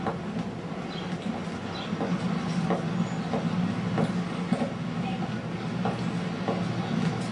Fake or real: real